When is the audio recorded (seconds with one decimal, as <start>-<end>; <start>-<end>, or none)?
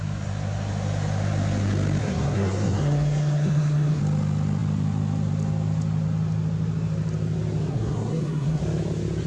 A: 0.0-2.0; 4.0-7.7; 8.6-9.3